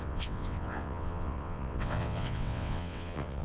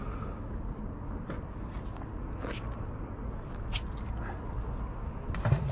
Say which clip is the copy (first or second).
first